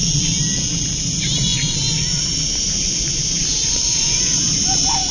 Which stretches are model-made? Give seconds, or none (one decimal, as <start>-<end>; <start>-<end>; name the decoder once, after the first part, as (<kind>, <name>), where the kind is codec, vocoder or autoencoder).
1.0-5.1 (vocoder, BigVGAN v2)